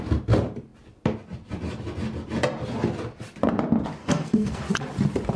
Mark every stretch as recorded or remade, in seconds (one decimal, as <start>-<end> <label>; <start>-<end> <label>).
0.0-4.0 recorded; 4.0-4.6 remade; 4.6-5.4 recorded